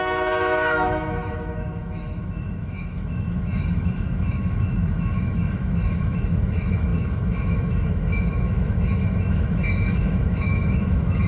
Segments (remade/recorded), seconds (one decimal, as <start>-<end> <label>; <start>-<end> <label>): 0.0-11.3 remade